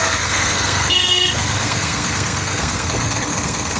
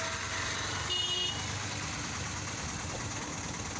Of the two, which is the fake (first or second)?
first